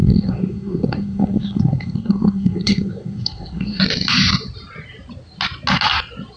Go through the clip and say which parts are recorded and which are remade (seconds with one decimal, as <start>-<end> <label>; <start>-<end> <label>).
0.0-3.8 remade; 3.8-6.4 recorded